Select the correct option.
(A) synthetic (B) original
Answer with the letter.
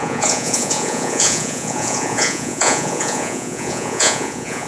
A